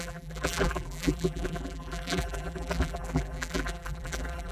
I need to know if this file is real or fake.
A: fake